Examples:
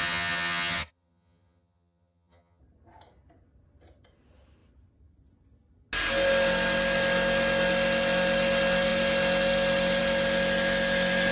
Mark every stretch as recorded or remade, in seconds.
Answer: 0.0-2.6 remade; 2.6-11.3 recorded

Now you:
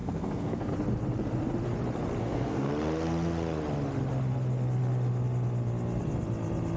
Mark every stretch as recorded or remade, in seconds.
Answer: 0.0-0.7 remade; 0.7-2.2 recorded; 2.2-2.7 remade; 2.7-6.8 recorded

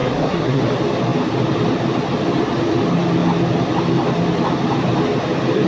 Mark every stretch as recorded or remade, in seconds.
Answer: 0.0-0.6 remade; 0.6-5.7 recorded

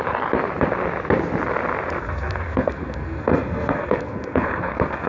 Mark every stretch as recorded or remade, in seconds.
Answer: 0.0-2.0 recorded; 2.0-5.1 remade

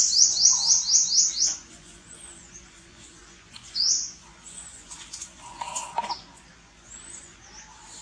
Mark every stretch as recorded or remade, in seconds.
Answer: 0.0-0.5 remade; 0.5-1.4 recorded; 1.4-8.0 remade

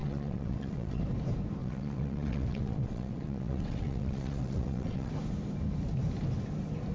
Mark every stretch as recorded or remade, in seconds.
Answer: 0.0-1.0 remade; 1.0-1.6 recorded; 1.6-5.1 remade; 5.1-6.9 recorded

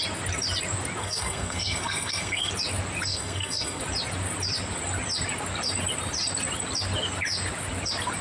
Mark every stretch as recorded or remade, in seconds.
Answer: 0.0-1.0 recorded; 1.0-2.5 remade; 2.5-3.1 recorded; 3.1-3.8 remade; 3.8-8.2 recorded

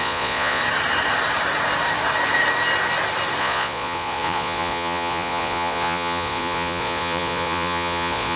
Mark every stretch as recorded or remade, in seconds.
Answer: 0.0-0.6 remade; 0.6-3.4 recorded; 3.4-8.4 remade